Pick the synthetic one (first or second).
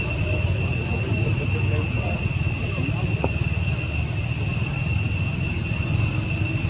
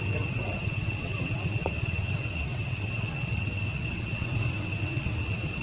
second